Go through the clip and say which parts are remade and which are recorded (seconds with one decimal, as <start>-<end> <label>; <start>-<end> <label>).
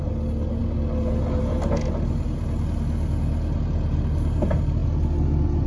0.0-5.7 recorded